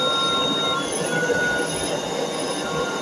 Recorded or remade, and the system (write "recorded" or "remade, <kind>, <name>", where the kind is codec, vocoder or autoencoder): recorded